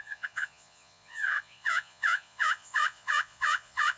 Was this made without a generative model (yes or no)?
no